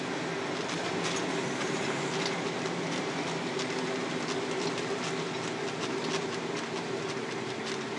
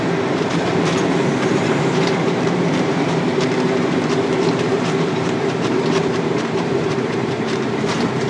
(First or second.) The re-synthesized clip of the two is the second